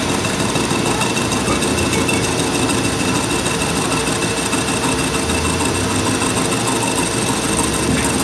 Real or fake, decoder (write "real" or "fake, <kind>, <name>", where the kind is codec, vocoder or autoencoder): real